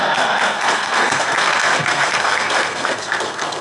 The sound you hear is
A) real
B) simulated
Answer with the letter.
B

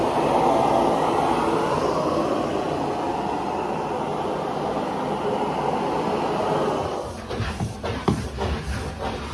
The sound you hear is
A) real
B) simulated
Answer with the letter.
A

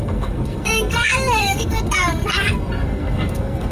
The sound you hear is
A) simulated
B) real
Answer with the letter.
A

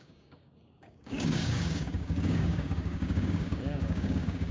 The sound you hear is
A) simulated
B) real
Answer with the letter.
A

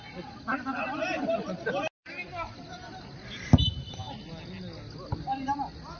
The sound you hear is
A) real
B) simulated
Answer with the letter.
A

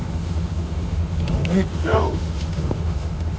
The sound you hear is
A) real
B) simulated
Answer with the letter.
B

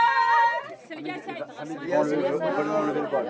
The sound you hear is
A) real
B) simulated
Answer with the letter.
A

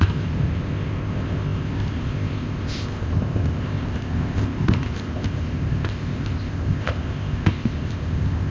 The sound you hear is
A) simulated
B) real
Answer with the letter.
A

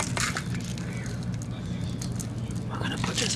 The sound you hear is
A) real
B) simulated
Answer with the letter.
A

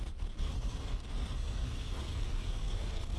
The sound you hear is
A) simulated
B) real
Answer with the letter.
A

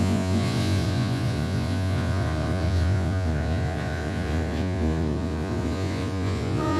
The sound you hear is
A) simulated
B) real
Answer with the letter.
A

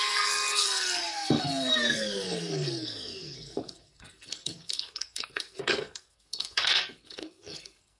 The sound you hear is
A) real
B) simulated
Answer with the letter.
B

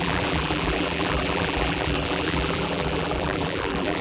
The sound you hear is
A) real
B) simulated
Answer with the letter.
B